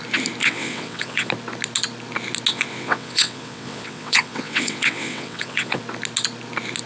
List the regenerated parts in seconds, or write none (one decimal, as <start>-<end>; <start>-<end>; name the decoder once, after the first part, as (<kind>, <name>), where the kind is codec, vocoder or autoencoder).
0.4-1.3 (vocoder, WaveNeXt); 2.5-5.8